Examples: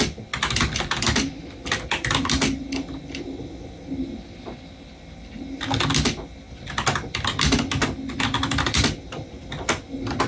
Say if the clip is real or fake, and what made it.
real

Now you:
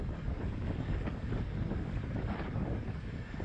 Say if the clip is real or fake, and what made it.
fake, codec, DAC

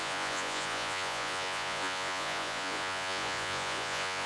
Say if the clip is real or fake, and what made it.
fake, vocoder, Vocos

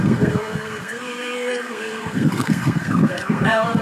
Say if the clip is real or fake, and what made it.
fake, codec, SNAC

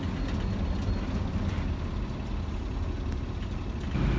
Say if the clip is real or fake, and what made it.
real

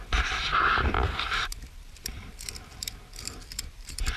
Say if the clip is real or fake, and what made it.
fake, vocoder, BigVGAN v2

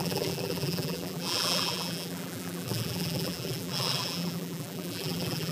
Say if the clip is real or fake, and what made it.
fake, vocoder, BigVGAN v2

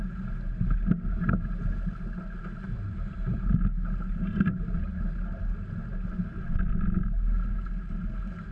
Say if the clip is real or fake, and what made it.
real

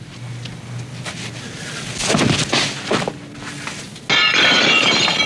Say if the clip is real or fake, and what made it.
real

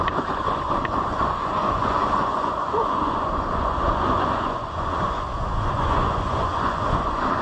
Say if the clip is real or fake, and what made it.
fake, vocoder, Vocos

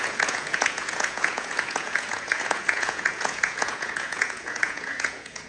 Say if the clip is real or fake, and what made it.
fake, vocoder, Vocos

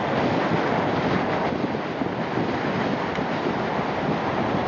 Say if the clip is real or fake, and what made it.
real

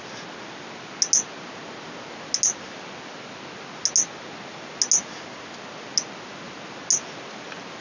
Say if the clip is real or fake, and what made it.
real